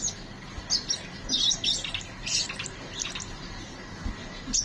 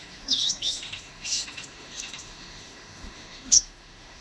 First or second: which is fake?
second